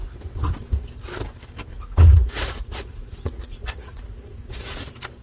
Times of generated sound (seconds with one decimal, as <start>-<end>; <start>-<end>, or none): 1.7-4.8